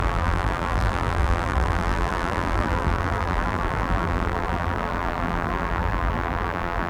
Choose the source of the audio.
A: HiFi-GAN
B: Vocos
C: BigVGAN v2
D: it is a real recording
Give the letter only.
C